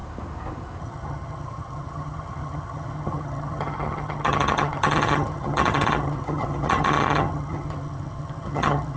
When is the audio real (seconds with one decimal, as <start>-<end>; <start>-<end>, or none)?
0.0-0.8